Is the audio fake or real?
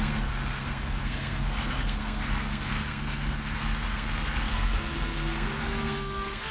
fake